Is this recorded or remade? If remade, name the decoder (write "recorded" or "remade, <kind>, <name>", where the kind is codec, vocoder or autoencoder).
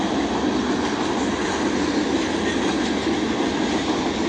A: recorded